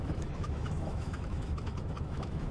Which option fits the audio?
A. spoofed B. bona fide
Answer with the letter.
A